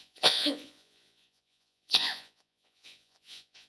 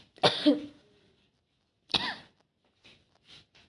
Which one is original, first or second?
second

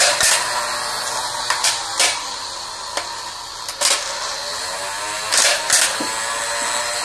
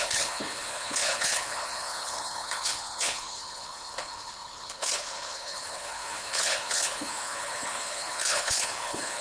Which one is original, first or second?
first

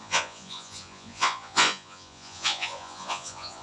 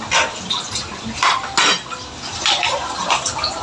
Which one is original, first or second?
second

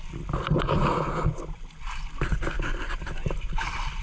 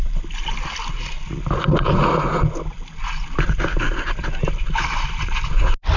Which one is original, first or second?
second